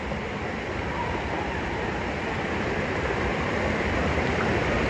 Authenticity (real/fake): fake